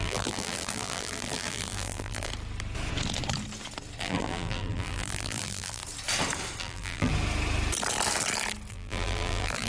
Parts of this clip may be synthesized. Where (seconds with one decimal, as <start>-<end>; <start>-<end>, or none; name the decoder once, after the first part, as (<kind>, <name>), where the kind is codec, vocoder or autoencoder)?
0.0-2.3 (vocoder, BigVGAN v2); 4.0-5.8; 6.6-7.1; 8.7-9.7